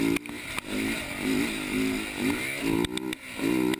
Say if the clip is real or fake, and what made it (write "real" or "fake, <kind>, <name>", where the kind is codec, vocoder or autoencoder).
real